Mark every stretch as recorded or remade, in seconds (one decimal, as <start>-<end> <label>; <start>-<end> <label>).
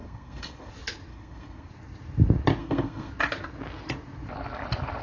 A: 0.0-0.7 remade; 0.7-1.1 recorded; 1.1-1.7 remade; 1.7-2.6 recorded; 2.6-3.1 remade; 3.1-5.0 recorded